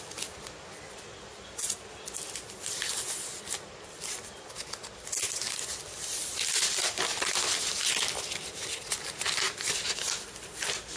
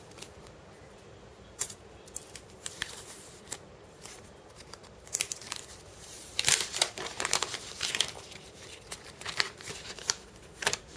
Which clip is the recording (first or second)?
first